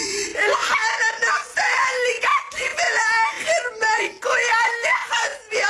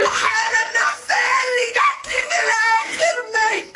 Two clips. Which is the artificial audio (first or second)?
second